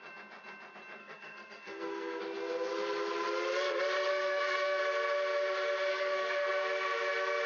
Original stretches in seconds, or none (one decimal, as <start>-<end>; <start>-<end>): 0.0-1.0; 2.2-4.1; 4.8-5.9; 6.5-7.5